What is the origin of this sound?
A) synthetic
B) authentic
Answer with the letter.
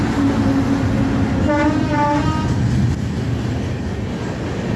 B